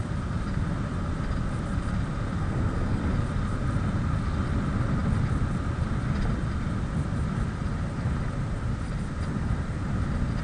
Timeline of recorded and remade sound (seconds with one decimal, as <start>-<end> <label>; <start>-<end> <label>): 0.0-2.4 recorded; 2.4-3.0 remade; 3.0-10.4 recorded